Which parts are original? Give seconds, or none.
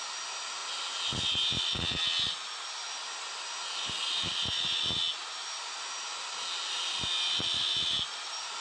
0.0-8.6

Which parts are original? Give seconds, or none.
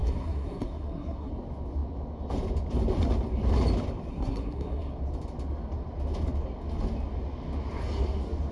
1.3-4.1; 4.9-8.5